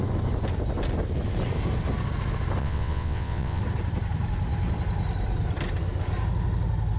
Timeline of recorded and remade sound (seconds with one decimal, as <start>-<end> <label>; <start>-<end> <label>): 0.0-2.6 recorded; 2.6-3.6 remade; 3.6-7.0 recorded